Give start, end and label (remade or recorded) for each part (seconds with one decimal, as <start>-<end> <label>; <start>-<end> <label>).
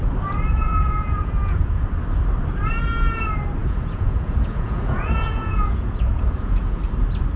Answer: 0.0-0.5 recorded; 0.5-1.8 remade; 1.8-3.6 recorded; 3.6-6.8 remade; 6.8-7.4 recorded